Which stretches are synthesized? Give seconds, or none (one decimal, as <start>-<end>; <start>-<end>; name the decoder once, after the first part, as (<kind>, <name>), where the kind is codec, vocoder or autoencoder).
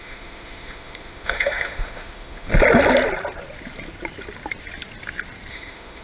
0.0-2.5 (autoencoder, DAC-VAE); 5.5-6.0